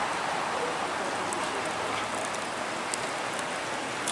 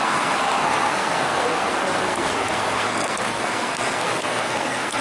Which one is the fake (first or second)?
second